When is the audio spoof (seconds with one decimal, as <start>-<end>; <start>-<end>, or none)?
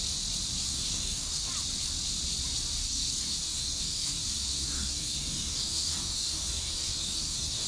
0.6-1.5; 2.8-7.7